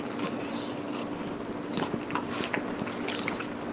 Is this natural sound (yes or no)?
no